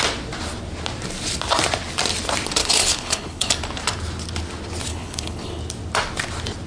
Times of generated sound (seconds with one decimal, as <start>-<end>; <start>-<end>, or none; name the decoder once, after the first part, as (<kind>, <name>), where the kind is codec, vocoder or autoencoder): 2.6-3.5 (codec, HILCodec); 4.9-5.6